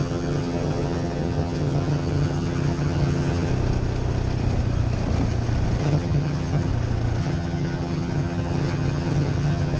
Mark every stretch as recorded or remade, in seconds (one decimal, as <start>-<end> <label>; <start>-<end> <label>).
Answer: 0.0-3.5 remade; 3.5-5.8 recorded; 5.8-6.7 remade; 6.7-7.2 recorded; 7.2-9.8 remade